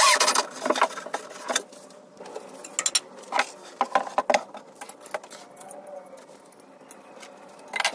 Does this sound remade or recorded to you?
recorded